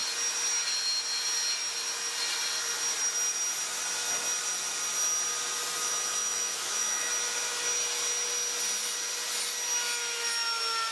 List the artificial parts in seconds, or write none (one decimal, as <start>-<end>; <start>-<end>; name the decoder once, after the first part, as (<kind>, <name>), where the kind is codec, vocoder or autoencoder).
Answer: 5.8-7.1 (autoencoder, DAC-VAE)